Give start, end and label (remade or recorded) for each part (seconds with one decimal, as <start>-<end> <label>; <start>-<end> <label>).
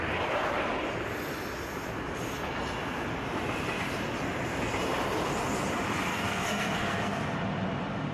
0.0-6.1 recorded; 6.1-7.2 remade; 7.2-8.1 recorded